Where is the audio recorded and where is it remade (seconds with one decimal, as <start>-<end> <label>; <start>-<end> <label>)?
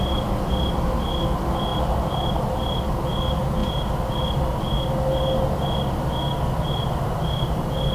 0.0-1.7 recorded; 1.7-2.4 remade; 2.4-3.6 recorded; 3.6-4.1 remade; 4.1-7.9 recorded